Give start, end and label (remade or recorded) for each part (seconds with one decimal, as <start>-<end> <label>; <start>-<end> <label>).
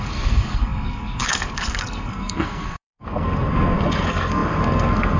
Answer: 0.0-5.2 remade